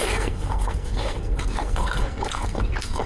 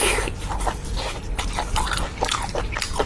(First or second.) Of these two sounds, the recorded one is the second